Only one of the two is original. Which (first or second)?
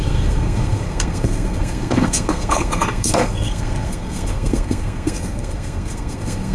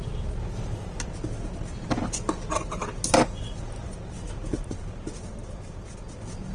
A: second